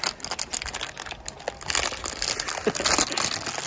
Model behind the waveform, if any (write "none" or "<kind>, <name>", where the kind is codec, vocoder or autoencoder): none